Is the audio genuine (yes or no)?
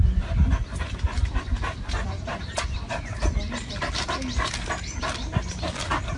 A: yes